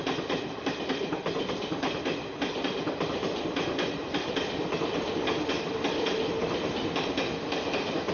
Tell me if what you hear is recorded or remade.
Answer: recorded